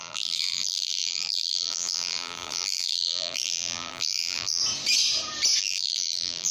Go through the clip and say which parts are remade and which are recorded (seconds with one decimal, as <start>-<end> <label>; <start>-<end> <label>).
0.0-4.6 remade; 4.6-5.6 recorded; 5.6-6.5 remade